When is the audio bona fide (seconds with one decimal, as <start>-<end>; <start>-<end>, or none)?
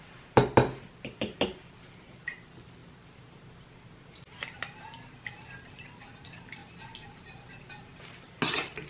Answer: 0.0-8.9